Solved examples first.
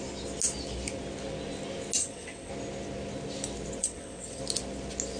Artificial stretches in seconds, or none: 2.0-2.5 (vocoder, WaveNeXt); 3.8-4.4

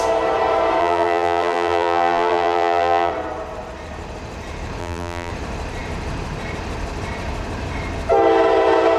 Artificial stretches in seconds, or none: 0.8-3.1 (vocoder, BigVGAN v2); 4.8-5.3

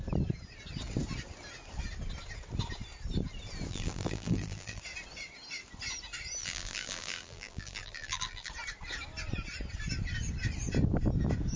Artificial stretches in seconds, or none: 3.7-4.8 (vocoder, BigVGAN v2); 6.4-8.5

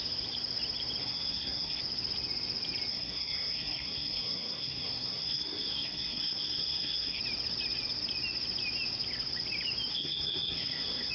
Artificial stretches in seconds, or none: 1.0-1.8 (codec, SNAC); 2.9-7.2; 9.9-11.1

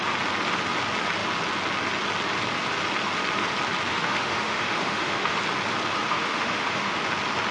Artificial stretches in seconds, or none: 3.9-5.4 (autoencoder, DAC-VAE); 6.0-7.0

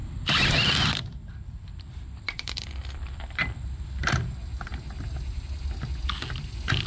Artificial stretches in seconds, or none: 0.0-4.1 (vocoder, BigVGAN v2)